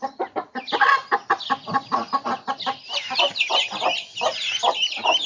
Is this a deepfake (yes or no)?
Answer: no